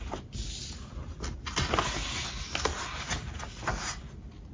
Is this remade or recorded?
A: recorded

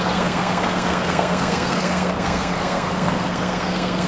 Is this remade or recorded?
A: remade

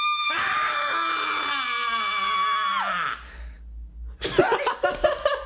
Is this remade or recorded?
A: recorded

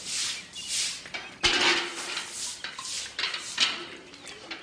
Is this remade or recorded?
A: recorded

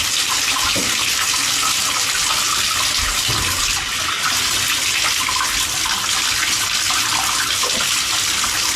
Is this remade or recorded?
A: recorded